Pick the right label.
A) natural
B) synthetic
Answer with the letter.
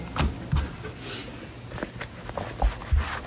A